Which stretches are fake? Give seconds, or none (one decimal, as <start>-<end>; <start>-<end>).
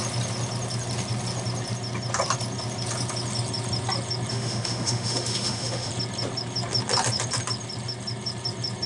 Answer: 4.3-5.9